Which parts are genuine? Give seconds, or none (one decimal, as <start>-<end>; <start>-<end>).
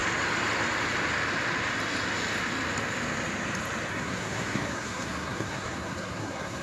0.0-3.9